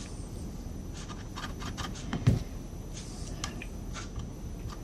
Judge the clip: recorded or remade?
recorded